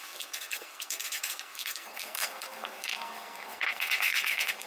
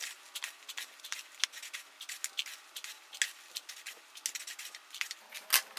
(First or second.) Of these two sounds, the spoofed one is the first